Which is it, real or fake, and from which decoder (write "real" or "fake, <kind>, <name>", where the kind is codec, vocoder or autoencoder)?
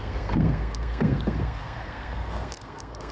fake, codec, SNAC